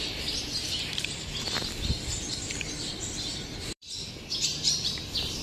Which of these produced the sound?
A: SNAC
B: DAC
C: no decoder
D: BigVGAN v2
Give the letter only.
D